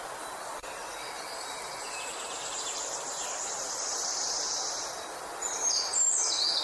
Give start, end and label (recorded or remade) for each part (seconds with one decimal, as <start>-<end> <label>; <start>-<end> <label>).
0.0-6.6 recorded